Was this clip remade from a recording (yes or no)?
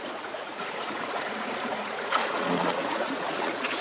yes